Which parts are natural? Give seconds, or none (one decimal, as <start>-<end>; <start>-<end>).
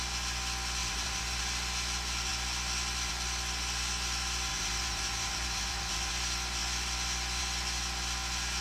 0.0-0.8; 1.4-4.5; 6.1-8.6